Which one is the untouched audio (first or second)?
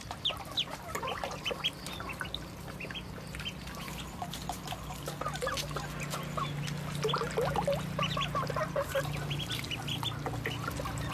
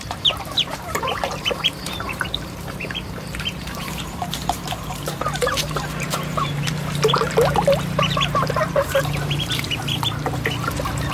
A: first